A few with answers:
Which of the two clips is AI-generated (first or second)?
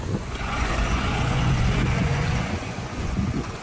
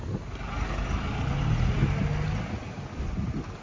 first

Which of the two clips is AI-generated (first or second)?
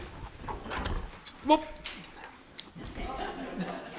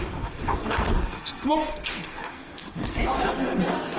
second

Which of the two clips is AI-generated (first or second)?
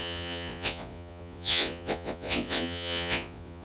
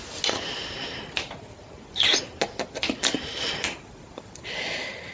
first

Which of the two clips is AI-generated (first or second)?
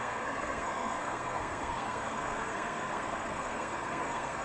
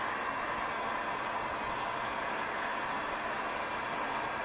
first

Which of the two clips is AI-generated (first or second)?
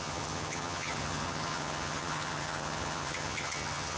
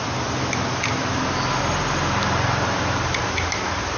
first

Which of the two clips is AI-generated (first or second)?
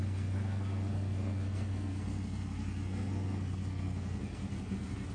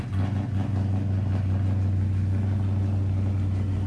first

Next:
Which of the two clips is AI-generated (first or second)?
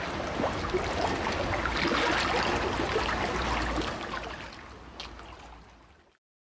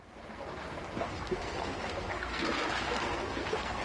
second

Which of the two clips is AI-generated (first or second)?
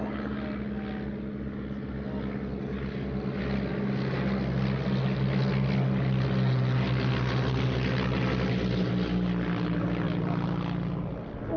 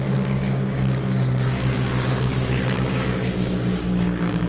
second